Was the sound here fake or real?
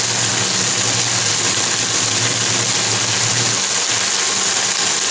real